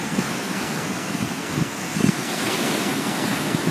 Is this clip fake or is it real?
fake